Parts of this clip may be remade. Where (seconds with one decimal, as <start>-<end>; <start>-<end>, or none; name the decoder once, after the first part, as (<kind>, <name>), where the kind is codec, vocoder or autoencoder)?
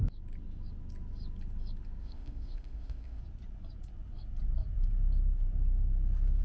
2.0-3.2 (codec, ZipCodec)